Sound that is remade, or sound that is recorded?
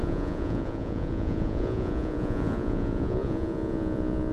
remade